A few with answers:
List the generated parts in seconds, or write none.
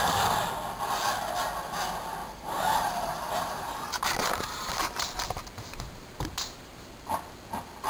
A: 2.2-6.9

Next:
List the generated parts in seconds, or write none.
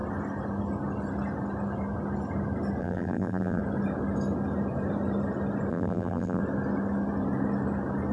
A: 2.8-3.6; 5.7-6.4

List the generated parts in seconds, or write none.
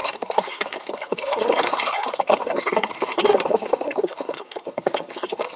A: 0.0-5.6